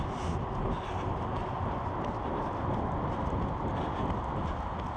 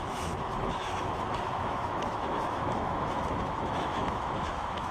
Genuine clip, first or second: first